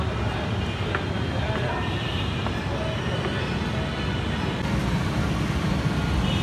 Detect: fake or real real